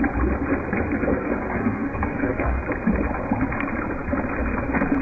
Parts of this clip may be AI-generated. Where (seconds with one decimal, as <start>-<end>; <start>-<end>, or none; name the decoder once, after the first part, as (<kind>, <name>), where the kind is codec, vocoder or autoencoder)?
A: 1.1-2.6 (codec, SNAC)